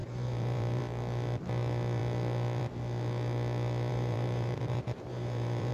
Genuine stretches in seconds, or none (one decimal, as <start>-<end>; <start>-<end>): 0.8-3.9